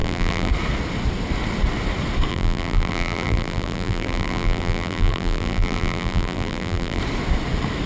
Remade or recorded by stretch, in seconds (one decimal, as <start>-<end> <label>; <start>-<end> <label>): 0.0-0.5 remade; 0.5-2.3 recorded; 2.3-7.0 remade; 7.0-7.9 recorded